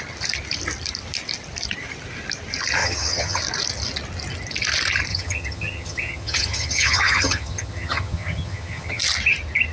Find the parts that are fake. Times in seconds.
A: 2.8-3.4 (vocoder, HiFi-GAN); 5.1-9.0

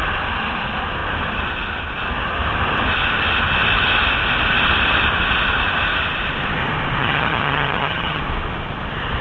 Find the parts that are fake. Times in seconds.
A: 7.0-8.2 (vocoder, HiFi-GAN)

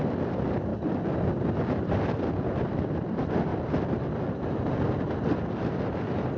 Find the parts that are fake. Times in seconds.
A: none

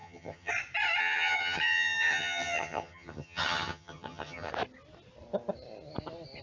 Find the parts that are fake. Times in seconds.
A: 0.0-0.5 (vocoder, HiFi-GAN); 1.0-4.5

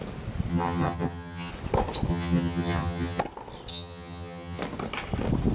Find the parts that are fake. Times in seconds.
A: 0.5-1.5 (vocoder, HiFi-GAN); 2.1-3.2; 3.7-4.6

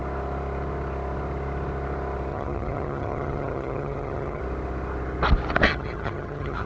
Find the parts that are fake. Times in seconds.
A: 2.3-4.4 (vocoder, HiFi-GAN); 5.7-6.7

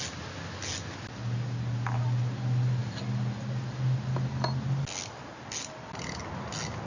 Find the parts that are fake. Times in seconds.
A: none

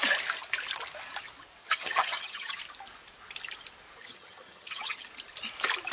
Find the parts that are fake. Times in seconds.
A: 1.6-2.6 (vocoder, HiFi-GAN); 4.0-5.0